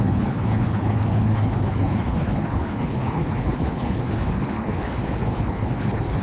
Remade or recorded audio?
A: remade